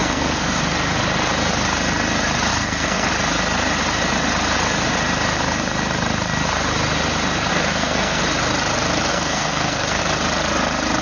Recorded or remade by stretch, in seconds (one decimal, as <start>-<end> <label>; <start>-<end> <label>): 0.0-0.6 remade; 0.6-2.5 recorded; 2.5-3.1 remade; 3.1-7.5 recorded; 7.5-8.2 remade; 8.2-9.1 recorded; 9.1-10.0 remade; 10.0-11.0 recorded